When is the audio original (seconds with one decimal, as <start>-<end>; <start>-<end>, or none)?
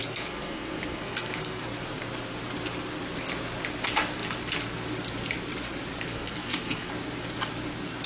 1.6-6.1; 6.9-8.1